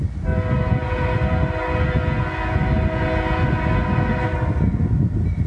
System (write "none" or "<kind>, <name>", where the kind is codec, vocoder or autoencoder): none